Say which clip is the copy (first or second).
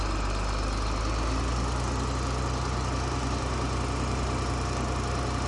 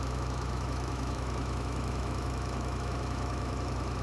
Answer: second